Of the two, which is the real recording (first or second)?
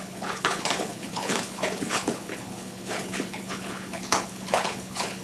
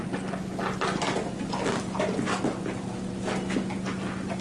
second